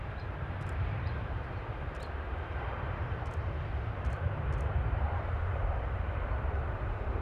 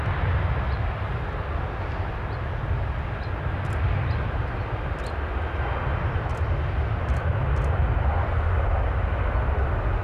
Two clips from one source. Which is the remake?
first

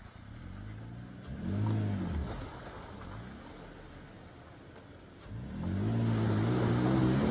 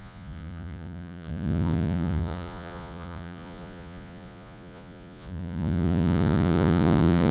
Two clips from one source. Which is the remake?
second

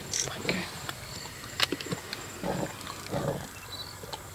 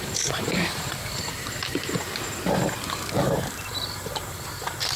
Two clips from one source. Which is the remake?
second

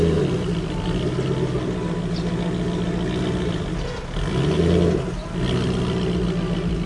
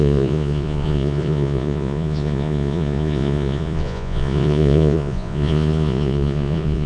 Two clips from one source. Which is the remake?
second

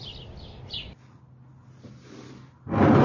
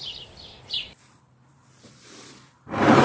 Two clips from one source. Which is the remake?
second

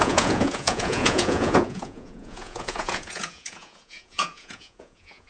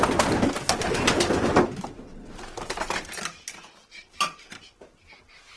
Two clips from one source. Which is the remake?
first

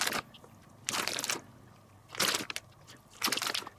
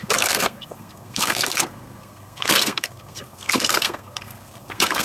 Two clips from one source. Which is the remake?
second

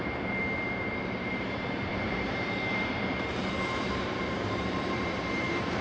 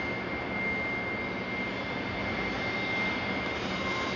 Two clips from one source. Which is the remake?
first